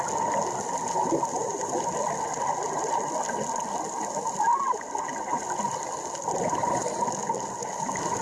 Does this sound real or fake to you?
real